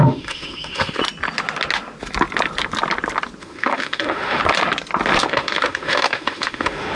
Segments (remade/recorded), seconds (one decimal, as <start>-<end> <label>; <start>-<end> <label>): 0.0-1.0 remade; 1.0-3.4 recorded; 3.4-4.4 remade; 4.4-5.2 recorded; 5.2-7.0 remade